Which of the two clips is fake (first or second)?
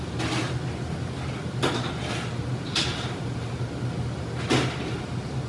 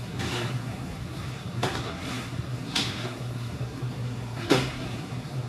second